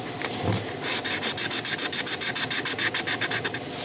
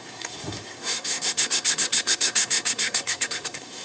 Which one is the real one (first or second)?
first